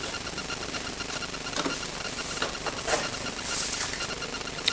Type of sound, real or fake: real